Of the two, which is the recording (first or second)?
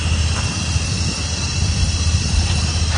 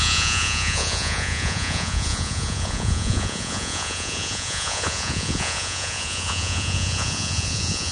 first